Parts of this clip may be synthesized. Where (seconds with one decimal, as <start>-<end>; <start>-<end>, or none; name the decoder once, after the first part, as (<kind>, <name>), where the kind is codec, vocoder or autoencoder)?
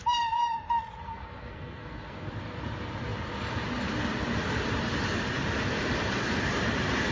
1.0-2.3 (codec, SNAC)